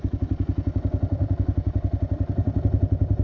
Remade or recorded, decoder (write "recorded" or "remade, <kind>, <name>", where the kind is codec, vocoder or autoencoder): recorded